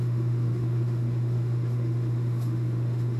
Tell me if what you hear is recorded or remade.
remade